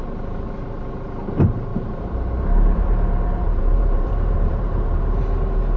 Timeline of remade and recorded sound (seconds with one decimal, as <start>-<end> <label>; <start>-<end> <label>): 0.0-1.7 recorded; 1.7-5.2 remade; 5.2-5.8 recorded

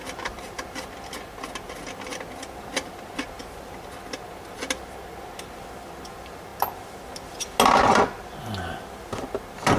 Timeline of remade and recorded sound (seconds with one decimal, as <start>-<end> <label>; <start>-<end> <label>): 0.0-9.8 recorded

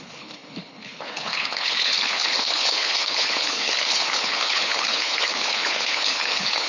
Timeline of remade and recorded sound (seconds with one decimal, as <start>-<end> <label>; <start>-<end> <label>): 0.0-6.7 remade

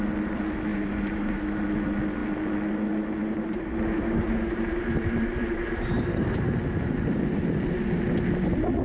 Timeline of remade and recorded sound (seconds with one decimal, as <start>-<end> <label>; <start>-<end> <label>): 0.0-0.7 recorded; 0.7-1.6 remade; 1.6-3.2 recorded; 3.2-6.5 remade; 6.5-8.8 recorded